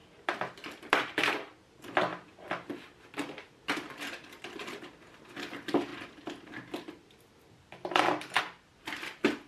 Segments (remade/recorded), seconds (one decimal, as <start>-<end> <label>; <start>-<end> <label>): 0.0-9.5 recorded